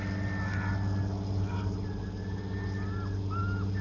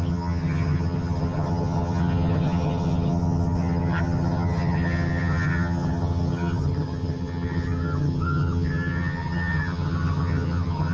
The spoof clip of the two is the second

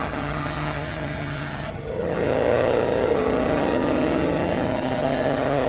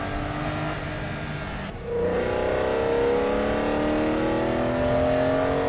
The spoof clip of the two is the first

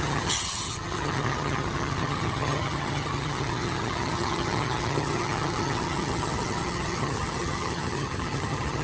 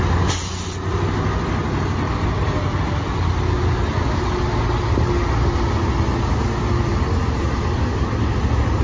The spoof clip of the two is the first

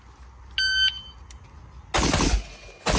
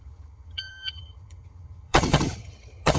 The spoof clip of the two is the second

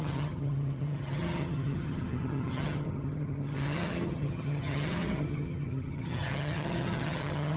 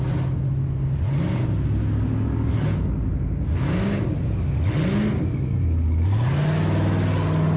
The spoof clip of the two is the first